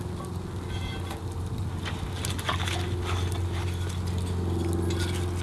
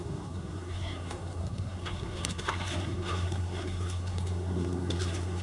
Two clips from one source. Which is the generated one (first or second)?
second